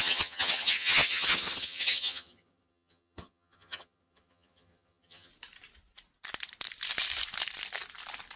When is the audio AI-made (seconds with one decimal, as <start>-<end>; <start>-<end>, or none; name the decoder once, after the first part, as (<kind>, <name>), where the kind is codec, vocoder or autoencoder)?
0.0-5.3 (vocoder, HiFi-GAN)